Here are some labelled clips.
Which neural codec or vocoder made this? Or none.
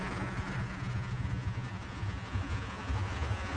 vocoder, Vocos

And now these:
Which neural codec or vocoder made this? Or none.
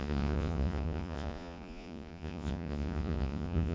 vocoder, Vocos